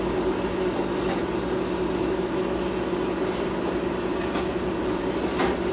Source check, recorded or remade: recorded